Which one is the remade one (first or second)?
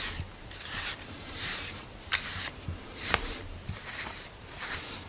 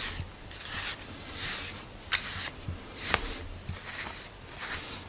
first